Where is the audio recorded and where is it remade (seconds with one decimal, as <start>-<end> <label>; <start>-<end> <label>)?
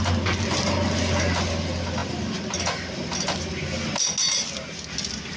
0.0-5.4 recorded